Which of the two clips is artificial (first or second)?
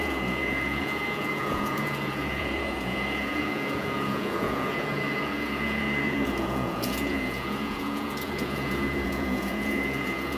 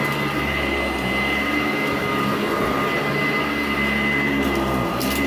first